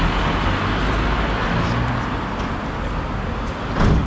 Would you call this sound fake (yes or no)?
no